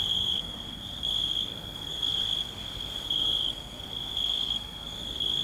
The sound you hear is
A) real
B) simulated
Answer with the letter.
B